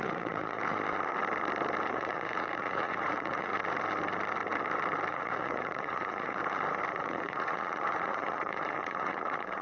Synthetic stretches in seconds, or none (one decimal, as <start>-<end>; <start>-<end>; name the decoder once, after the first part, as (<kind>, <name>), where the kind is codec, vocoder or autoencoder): 0.0-0.6 (vocoder, Vocos); 1.9-3.5; 5.1-6.4; 6.9-9.6